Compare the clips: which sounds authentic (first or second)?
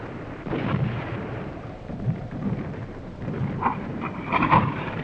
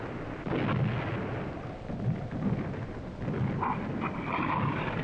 second